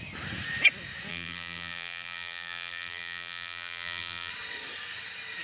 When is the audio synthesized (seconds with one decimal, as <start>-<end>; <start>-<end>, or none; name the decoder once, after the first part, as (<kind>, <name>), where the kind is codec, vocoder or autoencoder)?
1.1-4.3 (vocoder, BigVGAN v2)